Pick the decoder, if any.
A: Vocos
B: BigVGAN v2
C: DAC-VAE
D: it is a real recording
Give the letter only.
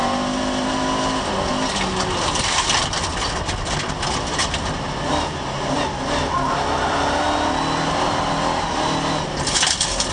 D